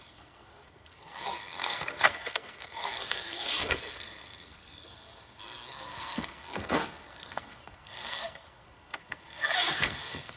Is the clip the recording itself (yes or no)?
no